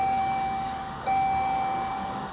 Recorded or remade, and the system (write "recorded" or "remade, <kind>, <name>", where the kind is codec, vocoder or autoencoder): remade, codec, DAC